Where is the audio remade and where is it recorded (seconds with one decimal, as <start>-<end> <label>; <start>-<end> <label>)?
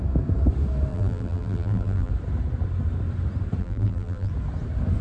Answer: 0.0-0.9 recorded; 0.9-2.1 remade; 2.1-3.6 recorded; 3.6-4.3 remade; 4.3-5.0 recorded